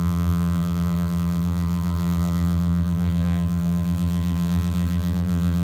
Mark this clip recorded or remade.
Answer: remade